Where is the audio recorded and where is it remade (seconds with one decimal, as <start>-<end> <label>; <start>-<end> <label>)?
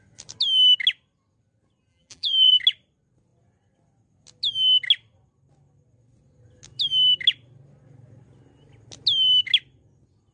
0.0-1.9 recorded; 1.9-2.6 remade; 2.6-10.3 recorded